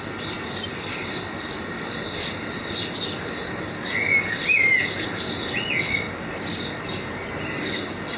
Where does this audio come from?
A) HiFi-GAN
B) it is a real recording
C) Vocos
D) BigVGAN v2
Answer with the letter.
B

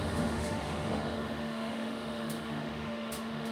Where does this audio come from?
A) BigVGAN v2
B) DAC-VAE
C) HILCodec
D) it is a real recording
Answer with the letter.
B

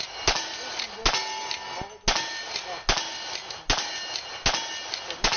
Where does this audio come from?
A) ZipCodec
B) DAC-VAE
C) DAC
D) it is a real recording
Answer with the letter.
D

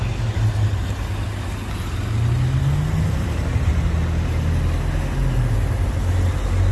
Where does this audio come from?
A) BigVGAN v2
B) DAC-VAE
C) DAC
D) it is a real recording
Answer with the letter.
D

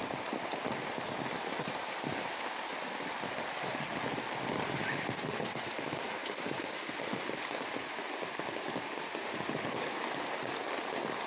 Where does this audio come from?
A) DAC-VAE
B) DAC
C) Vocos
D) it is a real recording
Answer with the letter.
D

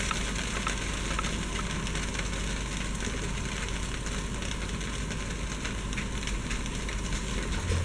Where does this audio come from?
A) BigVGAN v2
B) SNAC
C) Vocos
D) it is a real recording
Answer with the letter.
D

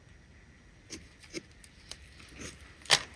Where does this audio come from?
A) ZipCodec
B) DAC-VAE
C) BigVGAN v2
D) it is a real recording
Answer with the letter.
C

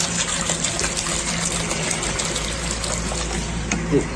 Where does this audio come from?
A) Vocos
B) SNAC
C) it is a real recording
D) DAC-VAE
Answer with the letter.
C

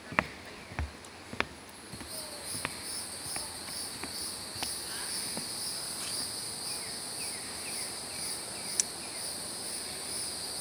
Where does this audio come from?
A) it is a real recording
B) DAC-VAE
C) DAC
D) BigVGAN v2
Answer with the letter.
A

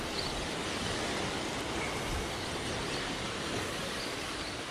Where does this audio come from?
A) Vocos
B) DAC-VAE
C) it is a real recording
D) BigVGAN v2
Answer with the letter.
C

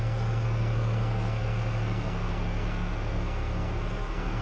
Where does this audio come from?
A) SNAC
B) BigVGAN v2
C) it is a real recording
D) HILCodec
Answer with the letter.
A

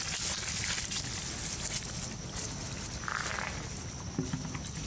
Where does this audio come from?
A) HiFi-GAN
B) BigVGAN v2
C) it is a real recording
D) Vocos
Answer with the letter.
C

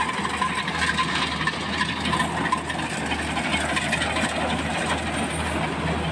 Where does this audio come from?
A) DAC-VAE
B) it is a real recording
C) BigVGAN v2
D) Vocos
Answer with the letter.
B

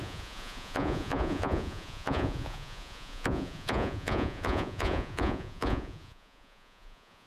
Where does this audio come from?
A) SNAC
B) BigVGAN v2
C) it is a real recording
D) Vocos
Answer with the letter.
D